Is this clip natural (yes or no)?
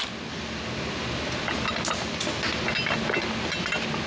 yes